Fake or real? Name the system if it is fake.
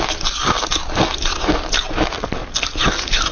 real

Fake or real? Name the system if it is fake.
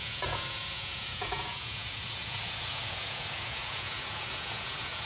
fake, vocoder, Vocos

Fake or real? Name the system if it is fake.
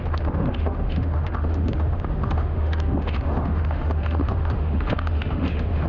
fake, autoencoder, DAC-VAE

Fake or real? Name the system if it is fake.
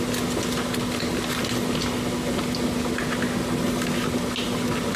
real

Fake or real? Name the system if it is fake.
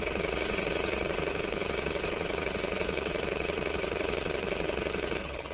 fake, vocoder, Vocos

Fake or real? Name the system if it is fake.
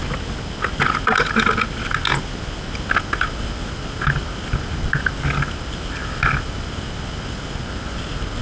real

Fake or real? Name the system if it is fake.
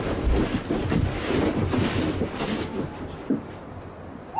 real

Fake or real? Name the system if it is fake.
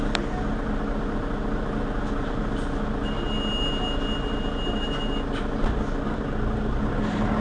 real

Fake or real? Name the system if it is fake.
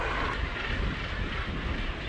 real